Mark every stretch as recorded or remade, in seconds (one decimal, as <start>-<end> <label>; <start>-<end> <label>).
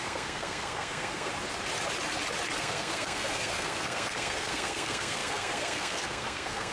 0.0-1.3 remade; 1.3-2.6 recorded; 2.6-6.7 remade